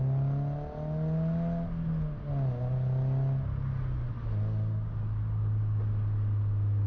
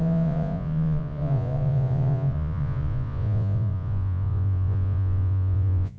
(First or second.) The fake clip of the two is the second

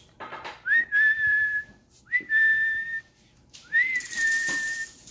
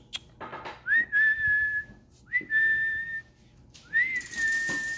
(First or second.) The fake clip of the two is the first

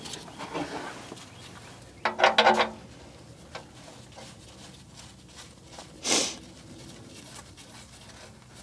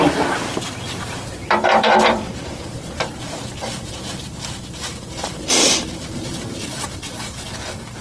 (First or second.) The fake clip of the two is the second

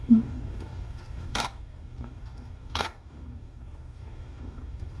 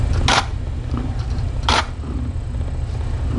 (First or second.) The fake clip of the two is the first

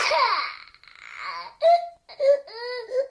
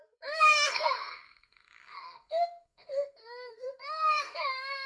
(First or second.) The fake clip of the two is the second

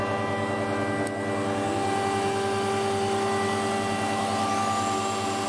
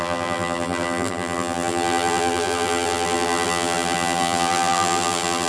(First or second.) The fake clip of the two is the second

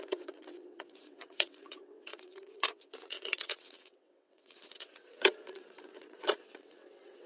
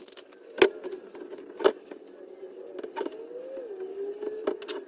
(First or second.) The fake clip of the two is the first